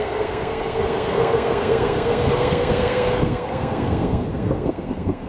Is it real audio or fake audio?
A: fake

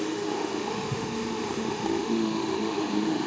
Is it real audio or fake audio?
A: fake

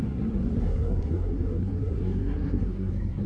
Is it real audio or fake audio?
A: fake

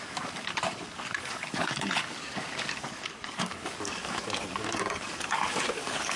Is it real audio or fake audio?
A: fake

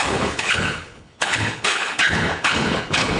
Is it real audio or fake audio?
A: fake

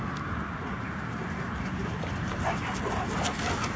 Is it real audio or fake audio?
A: real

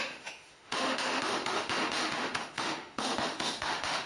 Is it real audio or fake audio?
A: fake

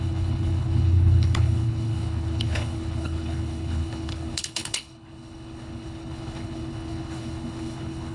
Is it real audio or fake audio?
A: fake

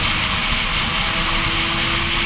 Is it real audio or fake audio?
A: real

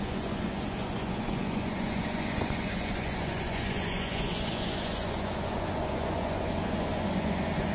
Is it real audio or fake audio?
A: fake